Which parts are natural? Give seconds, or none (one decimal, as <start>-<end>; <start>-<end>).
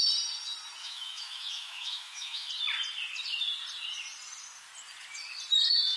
0.0-0.8; 2.5-6.0